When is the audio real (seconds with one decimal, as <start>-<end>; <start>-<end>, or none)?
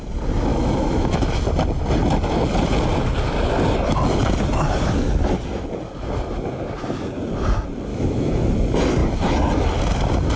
0.0-0.5; 1.3-7.9; 8.5-10.4